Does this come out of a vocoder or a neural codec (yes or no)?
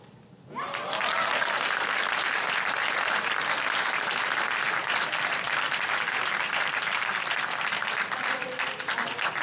no